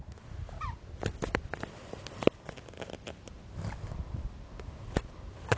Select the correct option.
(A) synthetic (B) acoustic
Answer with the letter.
B